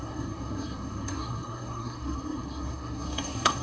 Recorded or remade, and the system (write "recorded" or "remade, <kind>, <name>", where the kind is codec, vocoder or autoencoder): remade, codec, SNAC